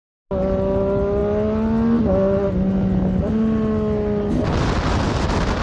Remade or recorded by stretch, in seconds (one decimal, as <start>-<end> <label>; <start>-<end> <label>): 0.0-5.6 recorded